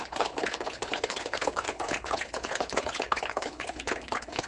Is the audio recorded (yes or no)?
no